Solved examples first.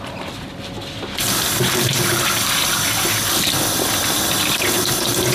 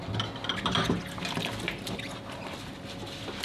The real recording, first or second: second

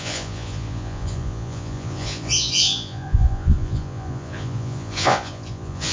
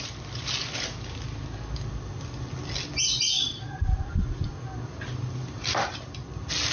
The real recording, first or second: second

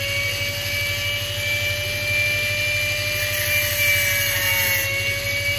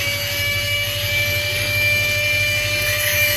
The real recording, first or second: first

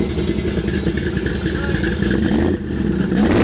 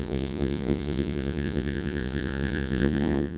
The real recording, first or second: first